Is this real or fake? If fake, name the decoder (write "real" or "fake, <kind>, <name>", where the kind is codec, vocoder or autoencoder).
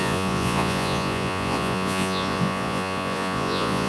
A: fake, vocoder, Vocos